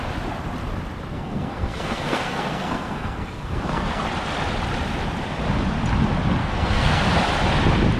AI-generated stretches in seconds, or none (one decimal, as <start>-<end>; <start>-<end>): 1.1-4.0; 6.4-7.0